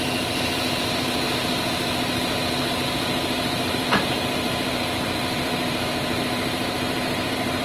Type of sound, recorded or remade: remade